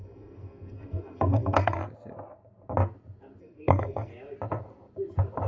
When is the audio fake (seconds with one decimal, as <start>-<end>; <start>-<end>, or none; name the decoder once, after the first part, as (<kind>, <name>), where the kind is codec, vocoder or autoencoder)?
0.0-1.8 (codec, SNAC); 3.4-4.1